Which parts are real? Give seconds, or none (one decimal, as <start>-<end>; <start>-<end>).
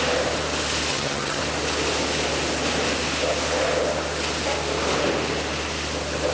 0.0-0.9; 1.4-6.3